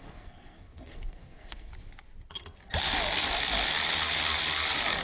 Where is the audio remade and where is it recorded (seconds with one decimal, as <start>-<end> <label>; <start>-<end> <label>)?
0.0-1.7 remade; 1.7-5.0 recorded